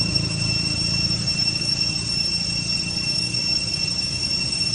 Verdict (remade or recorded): recorded